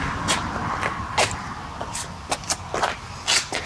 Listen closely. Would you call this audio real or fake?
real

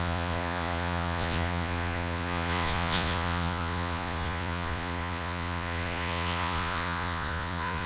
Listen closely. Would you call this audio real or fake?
fake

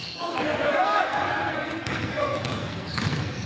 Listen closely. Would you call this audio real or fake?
fake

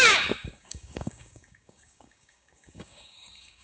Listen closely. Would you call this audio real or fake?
fake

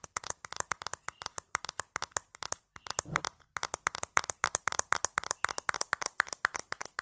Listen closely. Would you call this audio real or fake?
real